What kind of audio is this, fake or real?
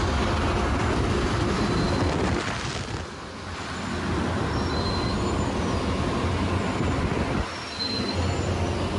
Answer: real